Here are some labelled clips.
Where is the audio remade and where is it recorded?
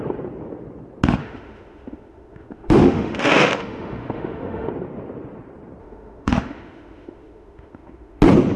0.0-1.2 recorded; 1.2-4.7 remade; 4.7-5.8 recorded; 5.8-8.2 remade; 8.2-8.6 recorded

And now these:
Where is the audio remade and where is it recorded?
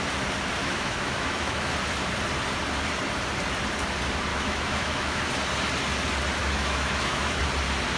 0.0-0.6 recorded; 0.6-1.7 remade; 1.7-4.3 recorded; 4.3-5.2 remade; 5.2-6.4 recorded; 6.4-7.4 remade; 7.4-8.0 recorded